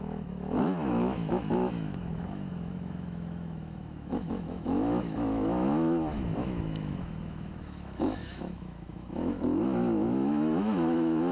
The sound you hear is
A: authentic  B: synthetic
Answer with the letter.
B